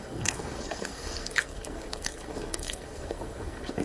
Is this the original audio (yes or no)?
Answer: no